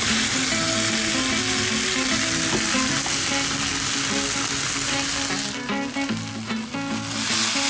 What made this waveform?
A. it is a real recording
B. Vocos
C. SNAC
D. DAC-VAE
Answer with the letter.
A